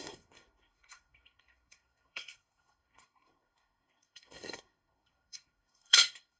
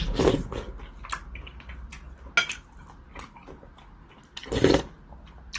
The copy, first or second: first